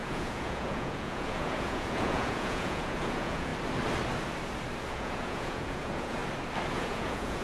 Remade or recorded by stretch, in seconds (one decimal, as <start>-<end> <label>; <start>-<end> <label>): 0.0-3.5 remade; 3.5-4.9 recorded; 4.9-6.2 remade; 6.2-6.7 recorded; 6.7-7.4 remade